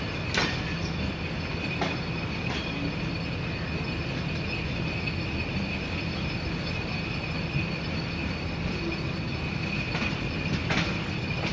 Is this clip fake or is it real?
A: real